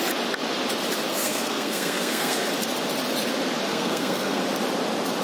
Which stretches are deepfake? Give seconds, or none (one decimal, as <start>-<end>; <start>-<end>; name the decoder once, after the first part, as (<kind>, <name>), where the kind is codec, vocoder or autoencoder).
1.1-2.5 (codec, SNAC); 3.7-4.4